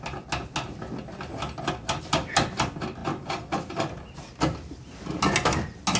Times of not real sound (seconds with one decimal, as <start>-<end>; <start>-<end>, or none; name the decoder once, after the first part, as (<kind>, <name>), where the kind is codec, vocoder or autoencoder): none